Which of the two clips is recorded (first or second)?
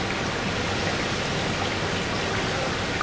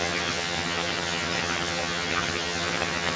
first